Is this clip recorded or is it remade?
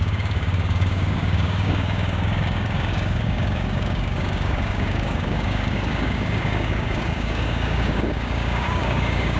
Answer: remade